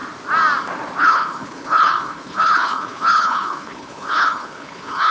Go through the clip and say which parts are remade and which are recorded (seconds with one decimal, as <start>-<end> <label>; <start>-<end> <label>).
0.0-1.0 recorded; 1.0-5.1 remade